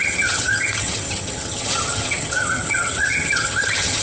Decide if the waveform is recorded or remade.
remade